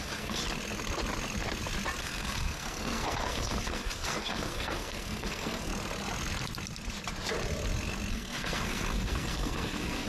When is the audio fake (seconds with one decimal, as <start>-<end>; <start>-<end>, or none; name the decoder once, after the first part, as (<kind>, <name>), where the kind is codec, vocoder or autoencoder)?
0.0-0.4 (codec, SNAC); 2.0-5.7; 8.1-10.1